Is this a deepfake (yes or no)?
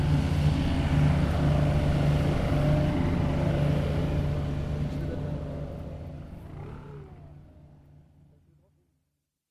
no